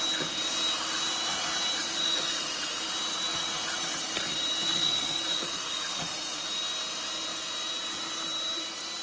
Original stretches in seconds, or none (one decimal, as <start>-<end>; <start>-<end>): 0.0-1.8; 2.7-3.3; 3.9-4.7; 6.4-9.0